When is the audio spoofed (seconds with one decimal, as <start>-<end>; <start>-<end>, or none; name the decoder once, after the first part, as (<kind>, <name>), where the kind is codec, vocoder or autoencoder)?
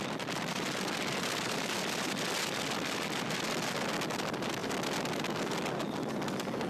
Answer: none